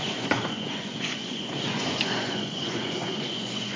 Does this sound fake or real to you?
fake